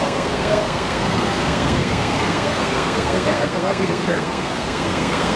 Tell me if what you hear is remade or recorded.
remade